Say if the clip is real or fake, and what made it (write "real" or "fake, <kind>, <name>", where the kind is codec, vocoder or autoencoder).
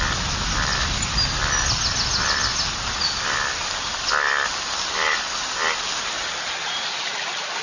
real